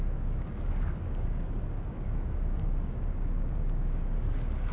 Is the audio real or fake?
fake